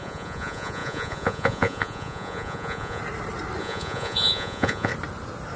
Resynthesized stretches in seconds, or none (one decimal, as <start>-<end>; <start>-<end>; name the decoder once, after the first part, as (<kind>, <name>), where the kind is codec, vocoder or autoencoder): 0.0-3.0 (vocoder, Vocos); 3.6-4.9